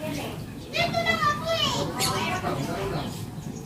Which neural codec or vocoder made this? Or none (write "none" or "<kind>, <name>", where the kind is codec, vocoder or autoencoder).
none